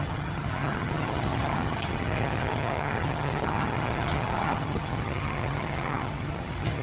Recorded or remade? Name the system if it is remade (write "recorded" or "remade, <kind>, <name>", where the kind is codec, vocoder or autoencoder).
remade, vocoder, HiFi-GAN